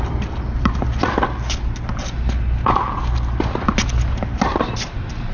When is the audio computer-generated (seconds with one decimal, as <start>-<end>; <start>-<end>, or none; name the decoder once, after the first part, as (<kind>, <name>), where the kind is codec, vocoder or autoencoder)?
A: 0.0-0.9 (vocoder, BigVGAN v2); 4.1-5.3